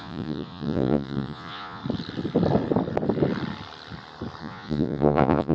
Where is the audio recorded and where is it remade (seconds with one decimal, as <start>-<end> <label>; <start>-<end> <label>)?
0.0-1.8 remade; 1.8-4.4 recorded; 4.4-5.5 remade